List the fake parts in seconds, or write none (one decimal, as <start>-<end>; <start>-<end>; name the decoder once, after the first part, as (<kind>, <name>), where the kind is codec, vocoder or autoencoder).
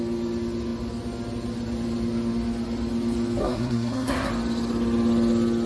3.4-4.3 (codec, SNAC)